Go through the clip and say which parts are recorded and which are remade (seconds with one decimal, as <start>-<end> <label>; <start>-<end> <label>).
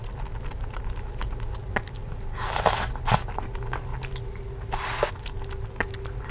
0.0-6.3 recorded